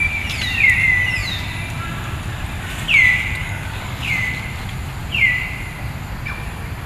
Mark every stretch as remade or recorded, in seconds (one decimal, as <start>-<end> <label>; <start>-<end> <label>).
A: 0.0-3.4 recorded; 3.4-4.1 remade; 4.1-6.9 recorded